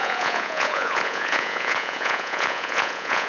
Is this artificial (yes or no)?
yes